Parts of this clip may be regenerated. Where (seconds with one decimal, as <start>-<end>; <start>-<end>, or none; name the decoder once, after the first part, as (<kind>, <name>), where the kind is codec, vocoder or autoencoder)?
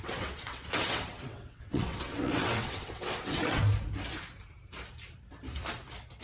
0.0-3.6 (vocoder, WaveNeXt)